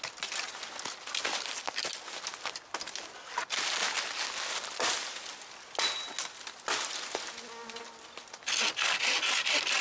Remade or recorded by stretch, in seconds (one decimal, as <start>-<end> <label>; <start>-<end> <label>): 0.0-9.8 recorded